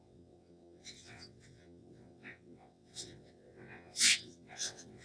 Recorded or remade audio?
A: remade